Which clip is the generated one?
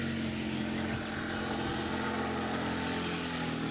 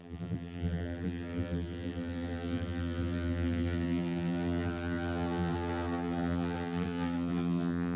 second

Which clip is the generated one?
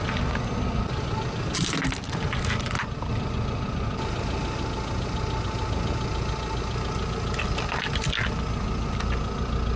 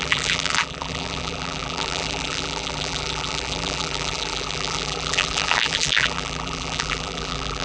second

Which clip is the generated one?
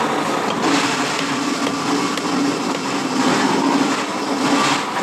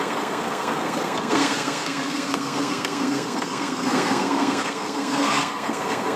second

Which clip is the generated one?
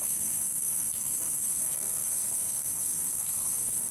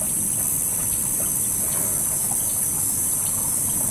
first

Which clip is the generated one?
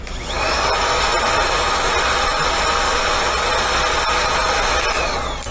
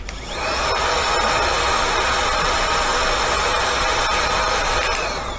second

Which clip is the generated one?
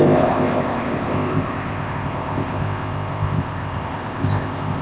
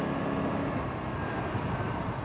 first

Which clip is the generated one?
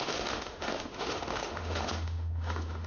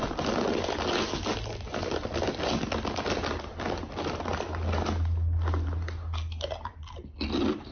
first